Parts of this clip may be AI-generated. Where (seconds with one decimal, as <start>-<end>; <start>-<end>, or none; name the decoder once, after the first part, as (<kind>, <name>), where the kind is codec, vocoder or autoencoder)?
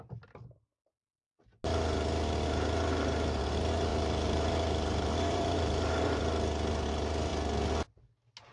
2.9-3.4 (vocoder, BigVGAN v2); 3.9-6.2